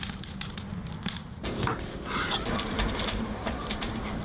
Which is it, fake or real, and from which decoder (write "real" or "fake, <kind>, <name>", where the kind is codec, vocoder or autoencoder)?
fake, vocoder, BigVGAN v2